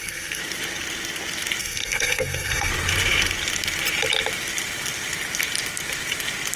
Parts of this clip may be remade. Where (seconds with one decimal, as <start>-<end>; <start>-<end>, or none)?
0.0-0.4; 1.6-2.7